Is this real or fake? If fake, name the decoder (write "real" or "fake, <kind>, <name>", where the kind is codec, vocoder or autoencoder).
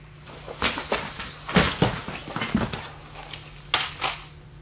real